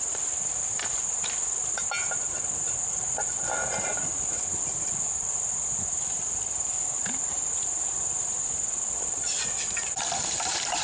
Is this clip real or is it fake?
real